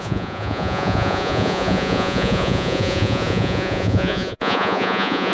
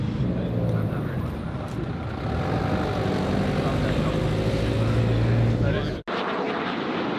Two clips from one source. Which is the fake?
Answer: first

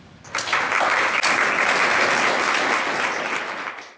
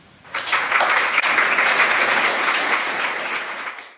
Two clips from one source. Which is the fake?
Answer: second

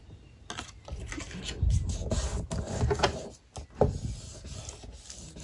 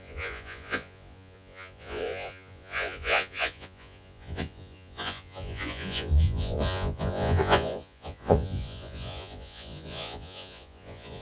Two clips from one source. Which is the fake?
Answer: second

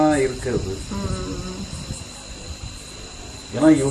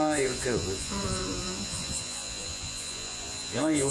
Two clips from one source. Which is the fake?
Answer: second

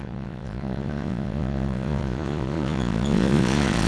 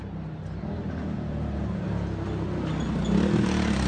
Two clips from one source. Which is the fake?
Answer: first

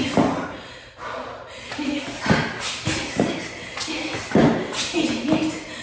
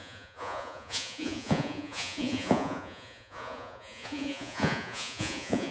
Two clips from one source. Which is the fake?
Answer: second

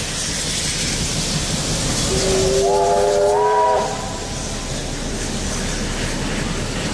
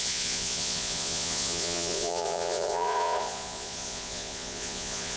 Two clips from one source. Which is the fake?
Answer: second